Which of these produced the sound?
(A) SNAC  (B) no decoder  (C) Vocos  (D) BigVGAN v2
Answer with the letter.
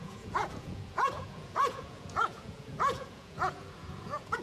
C